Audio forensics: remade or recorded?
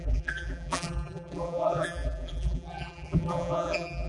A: remade